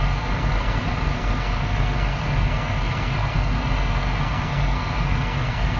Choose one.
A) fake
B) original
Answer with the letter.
A